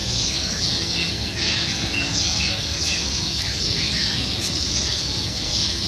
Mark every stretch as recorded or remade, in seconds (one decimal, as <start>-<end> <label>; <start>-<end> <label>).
0.0-5.9 remade

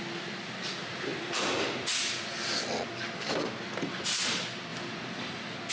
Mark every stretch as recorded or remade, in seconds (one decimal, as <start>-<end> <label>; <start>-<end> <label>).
0.0-5.7 recorded